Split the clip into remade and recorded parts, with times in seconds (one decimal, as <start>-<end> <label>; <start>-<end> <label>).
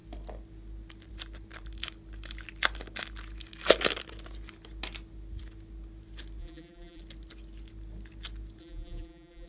0.0-6.4 recorded; 6.4-7.0 remade; 7.0-8.6 recorded; 8.6-9.5 remade